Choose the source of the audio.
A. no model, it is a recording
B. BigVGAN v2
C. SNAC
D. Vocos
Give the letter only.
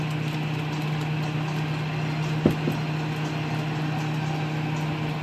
A